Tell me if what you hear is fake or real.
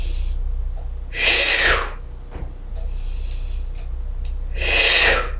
real